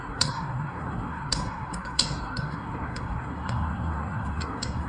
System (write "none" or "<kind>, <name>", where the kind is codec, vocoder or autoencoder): codec, SNAC